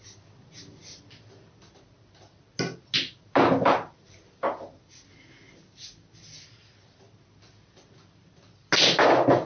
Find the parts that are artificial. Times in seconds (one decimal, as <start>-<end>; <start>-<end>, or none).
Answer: none